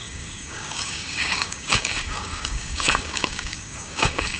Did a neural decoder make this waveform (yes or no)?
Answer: yes